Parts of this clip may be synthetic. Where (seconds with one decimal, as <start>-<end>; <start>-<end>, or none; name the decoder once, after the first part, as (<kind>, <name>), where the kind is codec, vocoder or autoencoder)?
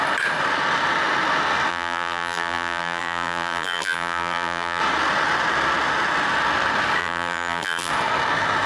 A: 1.7-4.8 (vocoder, BigVGAN v2); 7.0-7.9